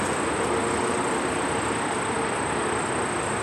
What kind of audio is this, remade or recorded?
recorded